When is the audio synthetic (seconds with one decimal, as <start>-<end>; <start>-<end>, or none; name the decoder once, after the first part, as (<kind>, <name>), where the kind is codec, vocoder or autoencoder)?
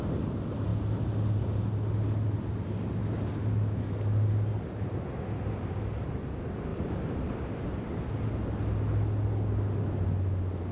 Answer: 6.7-7.3 (vocoder, BigVGAN v2)